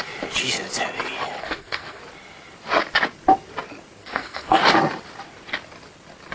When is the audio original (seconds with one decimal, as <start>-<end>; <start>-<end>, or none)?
0.0-1.4; 2.0-4.0; 4.6-6.3